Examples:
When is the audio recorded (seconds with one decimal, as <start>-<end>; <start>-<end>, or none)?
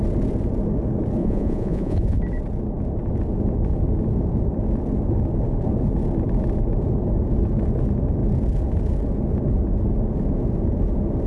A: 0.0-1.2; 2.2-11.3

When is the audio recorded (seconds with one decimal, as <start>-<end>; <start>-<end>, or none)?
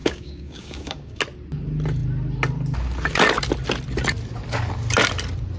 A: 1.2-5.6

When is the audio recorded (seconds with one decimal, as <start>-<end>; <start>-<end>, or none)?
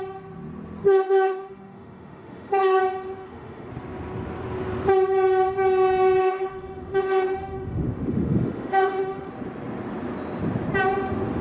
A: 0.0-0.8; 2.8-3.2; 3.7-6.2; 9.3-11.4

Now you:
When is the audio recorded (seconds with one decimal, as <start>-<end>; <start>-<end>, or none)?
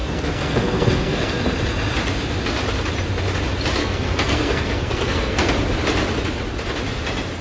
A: 1.4-3.8; 5.5-7.4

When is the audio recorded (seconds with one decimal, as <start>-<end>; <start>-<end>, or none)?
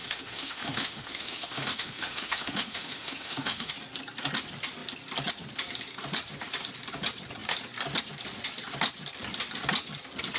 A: 3.7-10.4